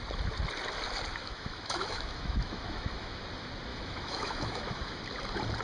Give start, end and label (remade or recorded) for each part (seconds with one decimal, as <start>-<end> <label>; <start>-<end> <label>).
0.0-1.2 recorded; 1.2-3.2 remade; 3.2-3.7 recorded; 3.7-5.0 remade; 5.0-5.6 recorded